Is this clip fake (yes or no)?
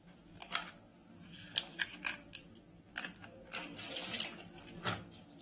yes